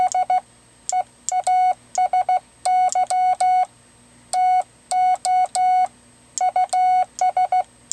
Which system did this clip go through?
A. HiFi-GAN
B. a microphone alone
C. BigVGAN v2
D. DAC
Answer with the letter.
B